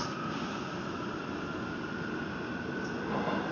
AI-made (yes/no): no